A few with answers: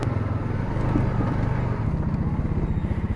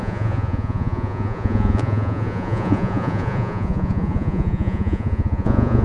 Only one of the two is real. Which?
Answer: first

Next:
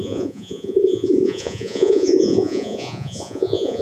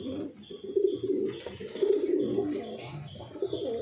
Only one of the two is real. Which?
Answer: second